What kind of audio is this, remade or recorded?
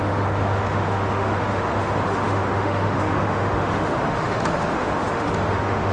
remade